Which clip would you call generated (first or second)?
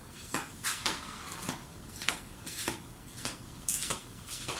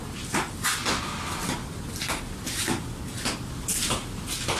first